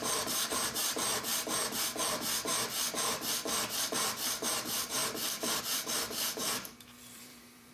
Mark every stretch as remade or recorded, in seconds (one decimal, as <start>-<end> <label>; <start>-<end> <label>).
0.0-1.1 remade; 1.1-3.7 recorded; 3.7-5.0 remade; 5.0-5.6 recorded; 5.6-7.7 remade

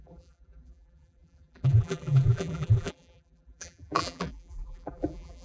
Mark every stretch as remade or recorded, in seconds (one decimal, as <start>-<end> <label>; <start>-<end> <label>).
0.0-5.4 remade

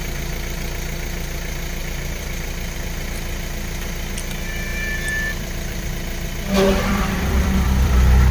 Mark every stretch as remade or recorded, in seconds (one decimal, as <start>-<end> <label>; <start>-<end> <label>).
0.0-1.8 recorded; 1.8-2.5 remade; 2.5-4.7 recorded; 4.7-5.9 remade; 5.9-6.9 recorded; 6.9-8.3 remade

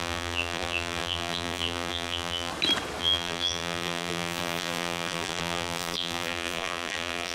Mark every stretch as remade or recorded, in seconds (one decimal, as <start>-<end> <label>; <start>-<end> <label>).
0.0-2.5 remade; 2.5-3.0 recorded; 3.0-7.3 remade

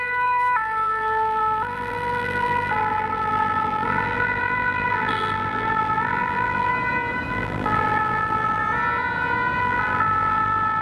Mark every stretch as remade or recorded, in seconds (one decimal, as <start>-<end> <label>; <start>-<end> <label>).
0.0-6.7 remade; 6.7-7.3 recorded; 7.3-8.6 remade; 8.6-9.6 recorded; 9.6-10.8 remade

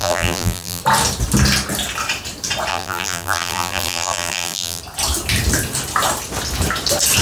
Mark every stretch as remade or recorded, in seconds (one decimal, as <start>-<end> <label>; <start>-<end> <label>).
0.0-0.8 remade; 0.8-2.7 recorded; 2.7-4.8 remade; 4.8-7.2 recorded

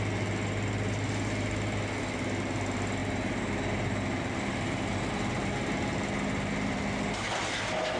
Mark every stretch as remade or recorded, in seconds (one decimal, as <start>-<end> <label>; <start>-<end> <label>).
0.0-8.0 recorded